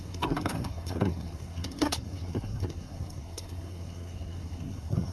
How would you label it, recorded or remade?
remade